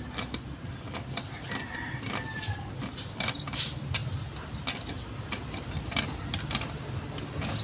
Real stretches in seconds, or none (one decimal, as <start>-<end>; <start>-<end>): 0.0-7.6